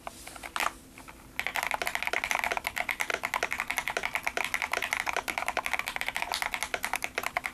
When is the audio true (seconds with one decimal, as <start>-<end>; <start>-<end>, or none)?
0.0-7.5